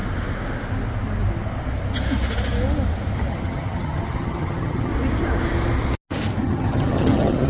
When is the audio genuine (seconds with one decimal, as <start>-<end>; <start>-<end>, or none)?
0.0-3.3; 4.9-6.4